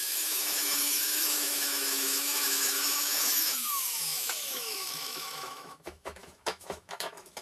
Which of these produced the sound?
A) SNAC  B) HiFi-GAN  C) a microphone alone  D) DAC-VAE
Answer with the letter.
D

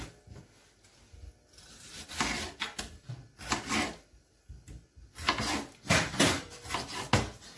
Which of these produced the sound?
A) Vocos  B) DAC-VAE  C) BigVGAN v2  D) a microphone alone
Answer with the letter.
D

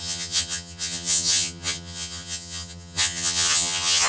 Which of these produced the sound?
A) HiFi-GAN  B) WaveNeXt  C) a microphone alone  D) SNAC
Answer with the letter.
A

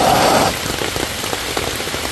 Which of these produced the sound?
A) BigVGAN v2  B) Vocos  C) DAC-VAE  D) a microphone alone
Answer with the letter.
D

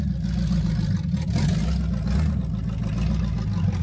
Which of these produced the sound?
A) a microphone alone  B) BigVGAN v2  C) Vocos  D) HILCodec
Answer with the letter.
A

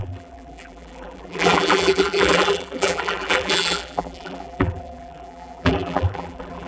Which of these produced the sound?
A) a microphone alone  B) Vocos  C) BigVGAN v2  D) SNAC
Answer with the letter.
C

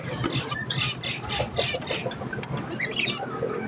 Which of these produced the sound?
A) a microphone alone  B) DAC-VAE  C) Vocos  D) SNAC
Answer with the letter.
A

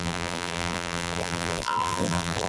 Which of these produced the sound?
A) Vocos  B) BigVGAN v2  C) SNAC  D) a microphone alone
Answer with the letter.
B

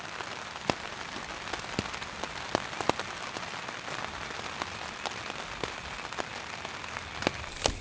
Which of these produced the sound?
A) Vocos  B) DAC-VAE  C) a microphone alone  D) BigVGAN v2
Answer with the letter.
C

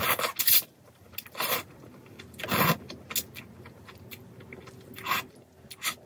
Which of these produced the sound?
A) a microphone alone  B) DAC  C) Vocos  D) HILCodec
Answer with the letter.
A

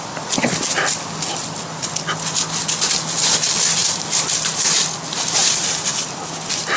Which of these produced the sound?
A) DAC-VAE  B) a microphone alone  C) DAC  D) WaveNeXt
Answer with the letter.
B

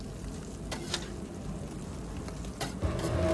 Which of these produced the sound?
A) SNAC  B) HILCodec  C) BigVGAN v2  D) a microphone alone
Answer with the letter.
D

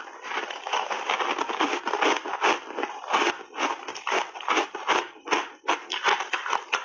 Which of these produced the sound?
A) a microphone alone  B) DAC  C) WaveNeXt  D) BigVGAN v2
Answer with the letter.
A